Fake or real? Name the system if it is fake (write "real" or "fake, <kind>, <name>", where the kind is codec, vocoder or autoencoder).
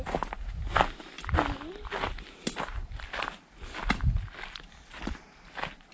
real